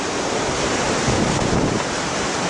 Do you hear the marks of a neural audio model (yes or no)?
no